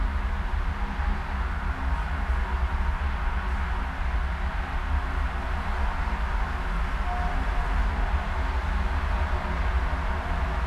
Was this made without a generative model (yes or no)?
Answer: yes